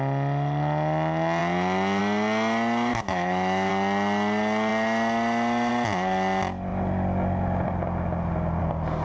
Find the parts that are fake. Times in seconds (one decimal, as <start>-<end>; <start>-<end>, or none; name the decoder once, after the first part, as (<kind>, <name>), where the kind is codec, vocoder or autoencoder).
2.9-3.7 (autoencoder, DAC-VAE)

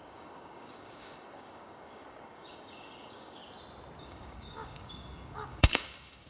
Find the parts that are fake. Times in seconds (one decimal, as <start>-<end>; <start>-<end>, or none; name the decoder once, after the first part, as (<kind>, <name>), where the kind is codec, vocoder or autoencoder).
0.0-3.4 (codec, DAC); 4.0-6.3

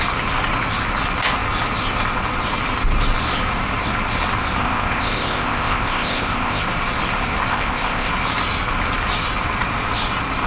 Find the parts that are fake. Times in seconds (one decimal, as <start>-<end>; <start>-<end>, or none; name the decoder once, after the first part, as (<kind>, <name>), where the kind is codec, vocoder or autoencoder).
4.6-6.6 (codec, ZipCodec); 7.5-8.1